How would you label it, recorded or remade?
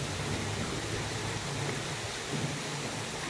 recorded